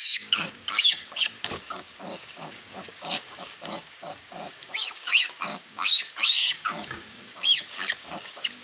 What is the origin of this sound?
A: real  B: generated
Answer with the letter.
B